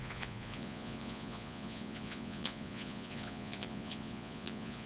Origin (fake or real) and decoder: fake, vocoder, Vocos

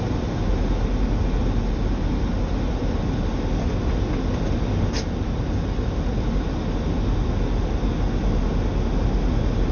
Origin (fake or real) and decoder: real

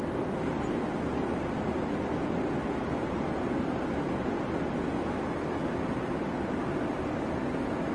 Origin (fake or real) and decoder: real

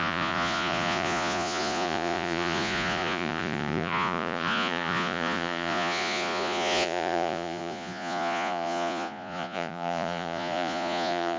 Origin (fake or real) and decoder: fake, vocoder, Vocos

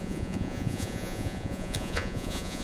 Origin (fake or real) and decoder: fake, vocoder, Vocos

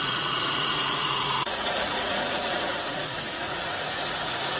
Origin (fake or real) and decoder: fake, vocoder, Vocos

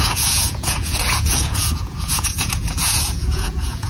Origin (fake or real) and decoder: fake, vocoder, Vocos